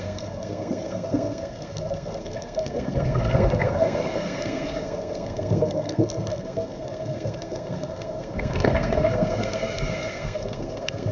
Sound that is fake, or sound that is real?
fake